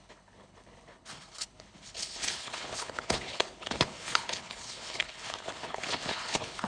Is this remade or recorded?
remade